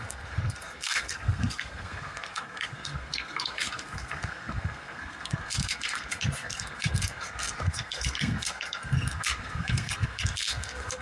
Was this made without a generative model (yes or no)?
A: no